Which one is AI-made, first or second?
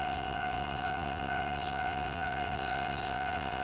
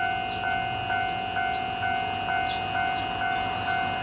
first